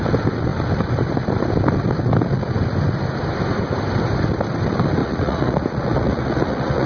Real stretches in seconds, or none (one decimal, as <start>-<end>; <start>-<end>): 0.0-5.0